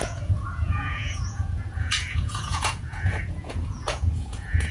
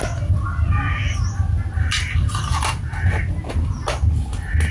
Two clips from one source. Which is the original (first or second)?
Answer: second